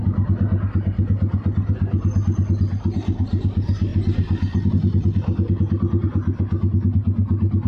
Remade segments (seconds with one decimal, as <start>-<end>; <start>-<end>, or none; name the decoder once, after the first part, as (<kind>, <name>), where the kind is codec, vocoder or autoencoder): none